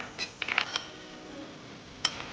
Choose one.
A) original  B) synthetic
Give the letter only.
A